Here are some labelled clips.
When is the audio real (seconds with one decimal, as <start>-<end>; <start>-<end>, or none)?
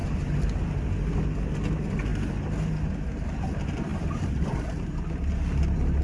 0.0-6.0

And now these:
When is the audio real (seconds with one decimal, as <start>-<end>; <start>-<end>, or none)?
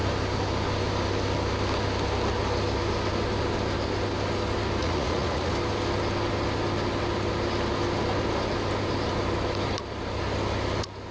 0.0-4.8; 5.5-11.1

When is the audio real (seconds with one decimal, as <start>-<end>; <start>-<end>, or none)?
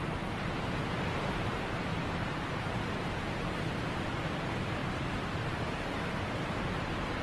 0.0-1.9; 3.7-4.8; 5.9-7.2